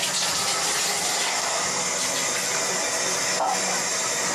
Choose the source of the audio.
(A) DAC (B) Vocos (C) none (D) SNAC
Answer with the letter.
C